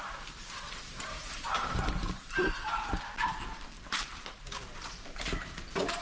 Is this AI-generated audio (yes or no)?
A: yes